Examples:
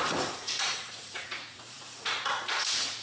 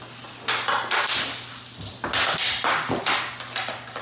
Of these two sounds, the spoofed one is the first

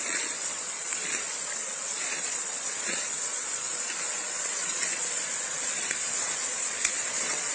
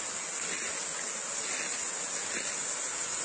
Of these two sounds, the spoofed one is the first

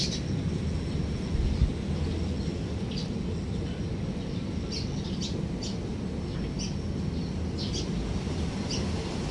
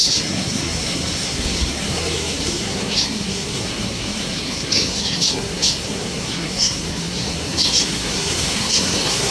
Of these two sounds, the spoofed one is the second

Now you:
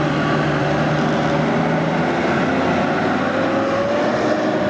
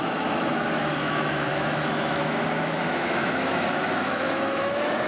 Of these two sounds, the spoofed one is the second